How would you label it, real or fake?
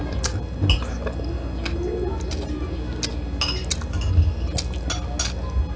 real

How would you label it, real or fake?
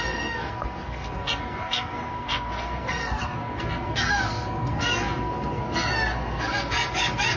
fake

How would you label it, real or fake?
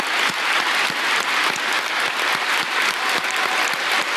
real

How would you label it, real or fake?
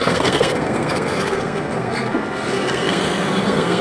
fake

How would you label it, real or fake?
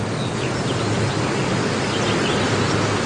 real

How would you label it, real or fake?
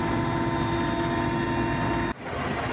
real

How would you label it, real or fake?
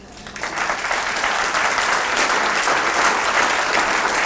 real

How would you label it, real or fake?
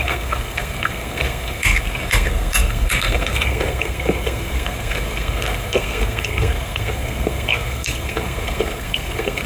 fake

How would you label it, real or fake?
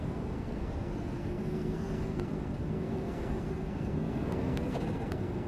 fake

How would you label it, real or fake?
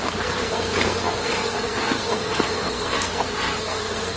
fake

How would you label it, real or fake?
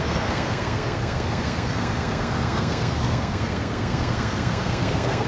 fake